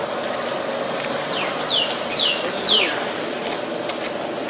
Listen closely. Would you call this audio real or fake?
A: real